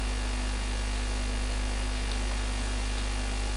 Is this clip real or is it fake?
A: real